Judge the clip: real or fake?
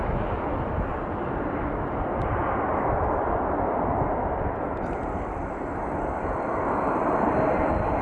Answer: real